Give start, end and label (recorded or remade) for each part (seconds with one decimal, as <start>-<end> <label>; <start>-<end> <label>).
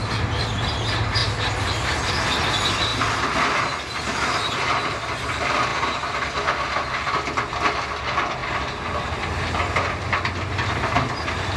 0.0-11.6 recorded